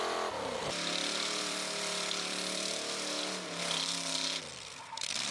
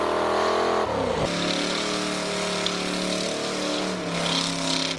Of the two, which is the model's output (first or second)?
first